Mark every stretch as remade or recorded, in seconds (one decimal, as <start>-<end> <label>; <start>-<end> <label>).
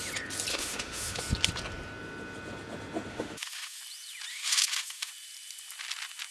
0.0-0.5 recorded; 0.5-1.2 remade; 1.2-3.1 recorded; 3.1-3.8 remade; 3.8-4.3 recorded; 4.3-5.1 remade; 5.1-6.3 recorded